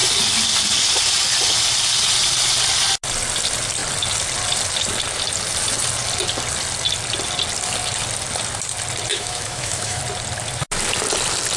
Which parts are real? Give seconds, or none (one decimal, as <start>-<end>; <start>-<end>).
0.0-9.1; 10.0-11.6